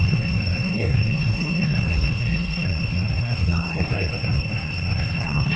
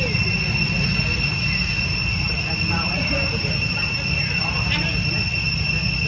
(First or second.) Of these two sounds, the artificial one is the first